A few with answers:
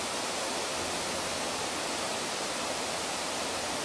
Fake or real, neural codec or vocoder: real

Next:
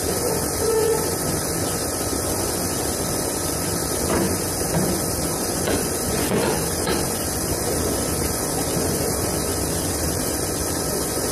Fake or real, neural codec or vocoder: fake, vocoder, Vocos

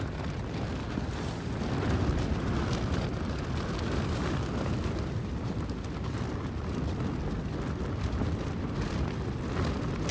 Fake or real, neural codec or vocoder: real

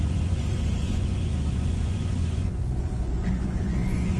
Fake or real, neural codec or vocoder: fake, vocoder, Vocos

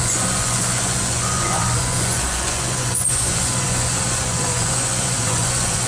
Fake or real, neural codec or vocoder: fake, vocoder, Vocos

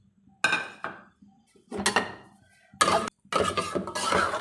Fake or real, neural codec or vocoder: real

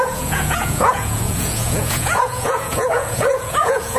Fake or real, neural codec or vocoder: fake, vocoder, Vocos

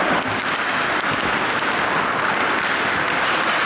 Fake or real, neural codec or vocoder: real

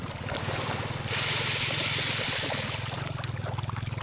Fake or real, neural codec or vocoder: real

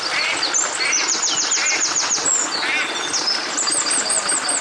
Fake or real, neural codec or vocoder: real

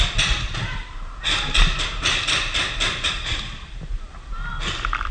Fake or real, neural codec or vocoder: real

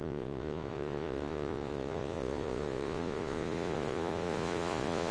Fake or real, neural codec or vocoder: fake, vocoder, Vocos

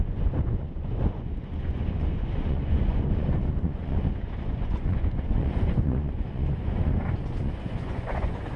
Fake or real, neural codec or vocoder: fake, vocoder, Vocos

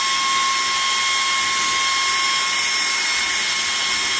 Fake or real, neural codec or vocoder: real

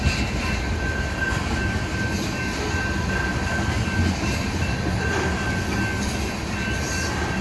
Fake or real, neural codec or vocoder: real